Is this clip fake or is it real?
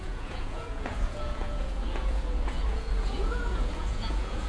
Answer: fake